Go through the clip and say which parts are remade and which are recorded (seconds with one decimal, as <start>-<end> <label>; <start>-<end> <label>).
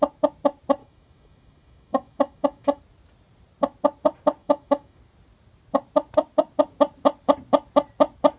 0.0-0.8 recorded; 0.8-2.8 remade; 2.8-4.4 recorded; 4.4-5.0 remade; 5.0-8.4 recorded